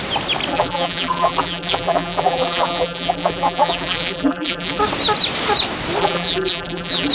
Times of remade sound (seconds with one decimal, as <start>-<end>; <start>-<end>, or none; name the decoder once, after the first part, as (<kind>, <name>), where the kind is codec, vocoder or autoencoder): 0.5-4.8 (vocoder, BigVGAN v2); 6.0-7.1